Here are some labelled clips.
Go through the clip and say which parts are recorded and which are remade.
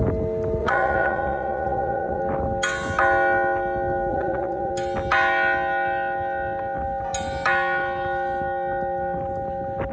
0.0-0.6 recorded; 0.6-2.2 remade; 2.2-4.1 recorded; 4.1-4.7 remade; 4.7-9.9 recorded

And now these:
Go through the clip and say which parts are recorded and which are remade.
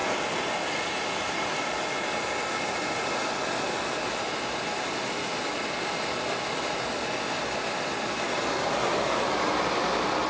0.0-10.3 recorded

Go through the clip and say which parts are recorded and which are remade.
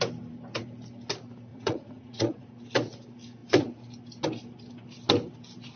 0.0-1.5 recorded; 1.5-2.5 remade; 2.5-5.8 recorded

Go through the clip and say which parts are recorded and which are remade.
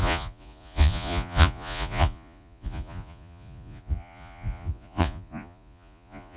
0.0-6.4 remade